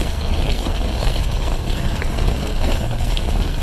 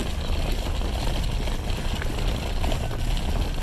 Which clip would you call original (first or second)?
second